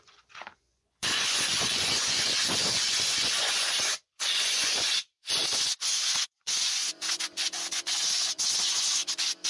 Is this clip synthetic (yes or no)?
yes